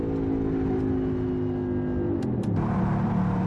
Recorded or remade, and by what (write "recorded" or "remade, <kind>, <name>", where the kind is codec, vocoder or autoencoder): recorded